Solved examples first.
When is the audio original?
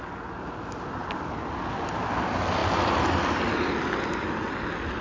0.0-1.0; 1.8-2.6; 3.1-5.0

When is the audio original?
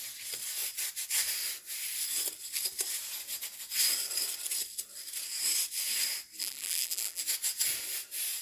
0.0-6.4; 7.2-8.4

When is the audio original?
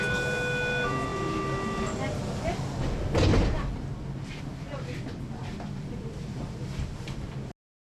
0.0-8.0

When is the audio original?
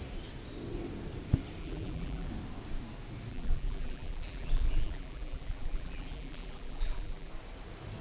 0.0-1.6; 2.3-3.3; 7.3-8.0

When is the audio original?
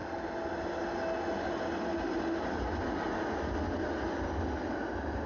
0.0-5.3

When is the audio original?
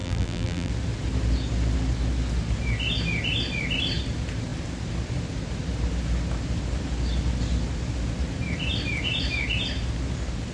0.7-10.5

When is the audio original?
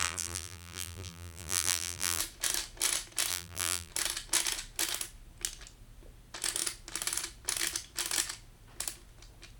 2.2-3.3; 3.9-9.6